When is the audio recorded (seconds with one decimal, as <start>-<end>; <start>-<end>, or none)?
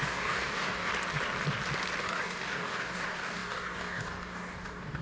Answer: 0.9-2.0